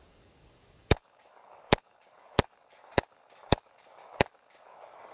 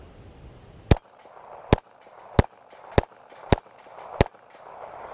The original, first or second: second